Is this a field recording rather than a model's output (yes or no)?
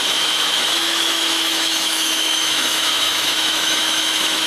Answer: no